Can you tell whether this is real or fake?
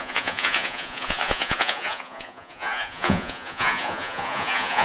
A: fake